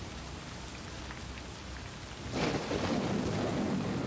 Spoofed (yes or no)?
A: no